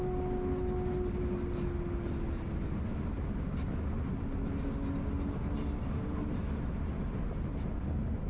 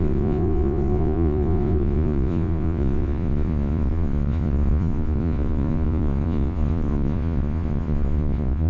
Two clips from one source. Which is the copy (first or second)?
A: second